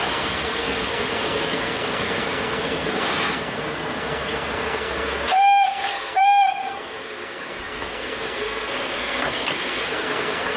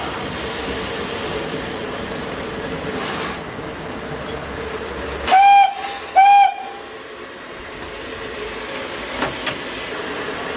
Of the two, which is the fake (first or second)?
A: first